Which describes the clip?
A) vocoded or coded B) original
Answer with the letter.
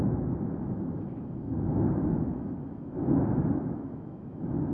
A